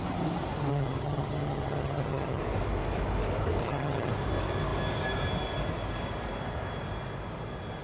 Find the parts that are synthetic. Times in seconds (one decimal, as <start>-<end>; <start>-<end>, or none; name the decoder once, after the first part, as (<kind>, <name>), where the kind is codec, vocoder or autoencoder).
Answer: 0.7-2.4 (vocoder, HiFi-GAN); 3.6-4.1